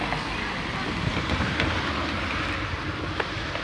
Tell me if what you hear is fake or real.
real